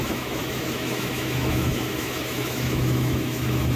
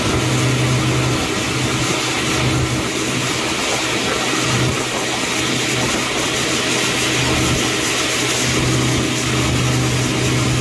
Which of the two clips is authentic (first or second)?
second